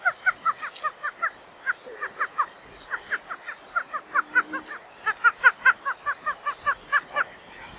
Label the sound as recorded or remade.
recorded